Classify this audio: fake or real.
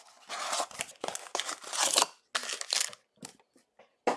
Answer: real